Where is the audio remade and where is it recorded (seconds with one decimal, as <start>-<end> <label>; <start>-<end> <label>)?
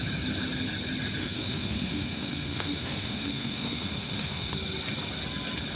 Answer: 0.0-1.2 recorded; 1.2-4.5 remade; 4.5-5.8 recorded